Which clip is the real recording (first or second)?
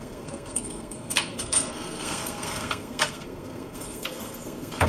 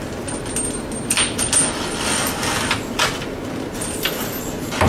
second